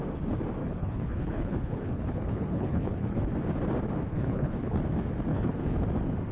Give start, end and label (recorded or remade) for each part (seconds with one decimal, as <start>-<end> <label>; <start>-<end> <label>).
0.0-0.6 recorded; 0.6-3.2 remade; 3.2-4.1 recorded; 4.1-4.8 remade; 4.8-5.3 recorded; 5.3-5.8 remade; 5.8-6.3 recorded